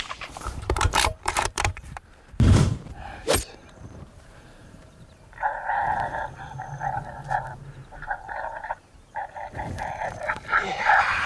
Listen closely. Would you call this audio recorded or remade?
remade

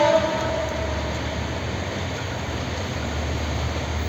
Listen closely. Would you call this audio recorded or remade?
recorded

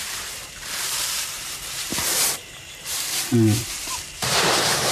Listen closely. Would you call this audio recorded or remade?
remade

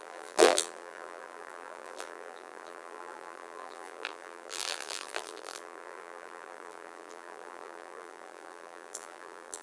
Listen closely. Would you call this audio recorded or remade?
remade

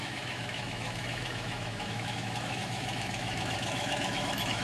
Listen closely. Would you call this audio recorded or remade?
remade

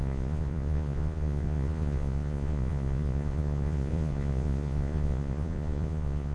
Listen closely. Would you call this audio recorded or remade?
remade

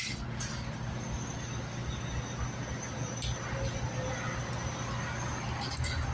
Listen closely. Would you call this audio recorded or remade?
recorded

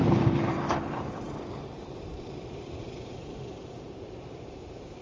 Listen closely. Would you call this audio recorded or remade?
remade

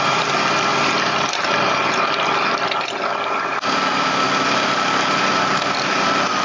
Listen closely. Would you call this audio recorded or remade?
recorded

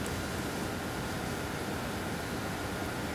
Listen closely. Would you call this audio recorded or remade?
recorded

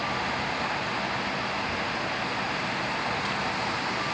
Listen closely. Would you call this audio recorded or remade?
recorded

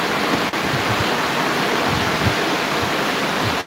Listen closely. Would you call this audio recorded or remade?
recorded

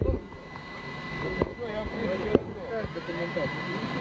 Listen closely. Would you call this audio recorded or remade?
recorded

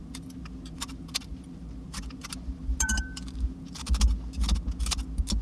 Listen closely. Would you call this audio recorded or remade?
recorded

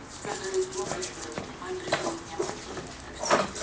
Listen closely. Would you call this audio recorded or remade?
recorded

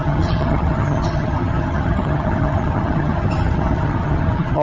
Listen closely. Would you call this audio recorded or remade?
remade